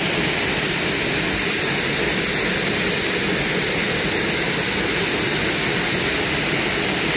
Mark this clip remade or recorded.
recorded